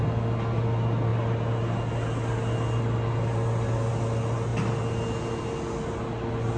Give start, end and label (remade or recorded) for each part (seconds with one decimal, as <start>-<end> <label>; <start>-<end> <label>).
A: 0.0-6.6 recorded